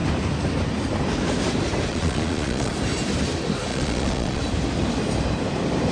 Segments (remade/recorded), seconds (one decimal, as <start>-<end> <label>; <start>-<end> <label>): 0.0-1.9 recorded; 1.9-2.7 remade; 2.7-3.7 recorded; 3.7-4.4 remade; 4.4-5.9 recorded